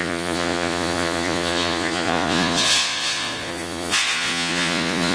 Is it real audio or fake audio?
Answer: fake